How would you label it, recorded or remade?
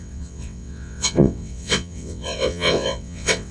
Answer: remade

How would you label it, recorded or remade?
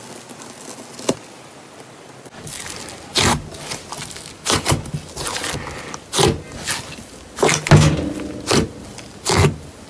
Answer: recorded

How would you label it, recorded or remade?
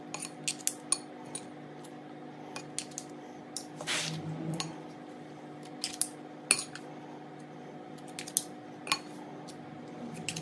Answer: recorded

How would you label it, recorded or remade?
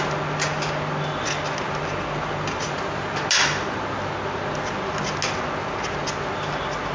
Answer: recorded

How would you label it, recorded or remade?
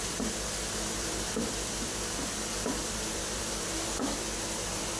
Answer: remade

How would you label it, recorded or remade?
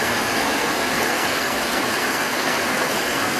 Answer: remade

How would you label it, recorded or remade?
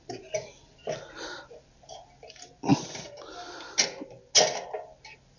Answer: recorded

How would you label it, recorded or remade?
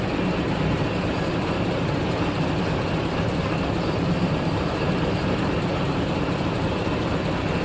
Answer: remade